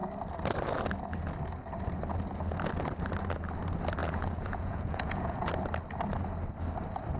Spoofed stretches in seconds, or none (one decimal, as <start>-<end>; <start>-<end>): 4.0-5.5